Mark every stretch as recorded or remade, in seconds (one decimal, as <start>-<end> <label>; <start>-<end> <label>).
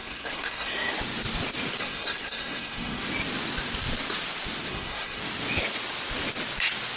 0.0-0.9 remade; 0.9-1.8 recorded; 1.8-3.0 remade; 3.0-4.7 recorded; 4.7-5.2 remade; 5.2-7.0 recorded